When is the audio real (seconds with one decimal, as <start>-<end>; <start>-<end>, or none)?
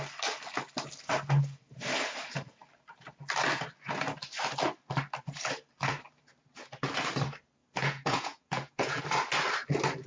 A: 0.0-7.6; 9.0-10.1